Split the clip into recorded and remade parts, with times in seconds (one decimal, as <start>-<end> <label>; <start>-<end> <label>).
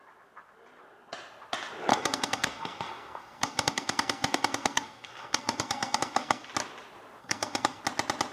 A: 0.0-1.9 recorded; 1.9-6.5 remade; 6.5-7.2 recorded; 7.2-7.8 remade; 7.8-8.3 recorded